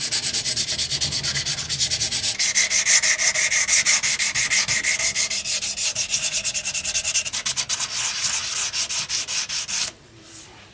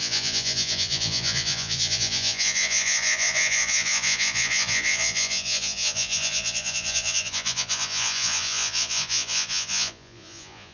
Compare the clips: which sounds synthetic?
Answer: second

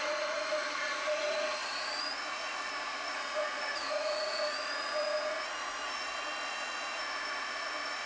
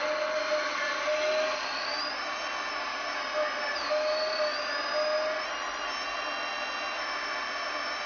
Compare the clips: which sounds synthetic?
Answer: first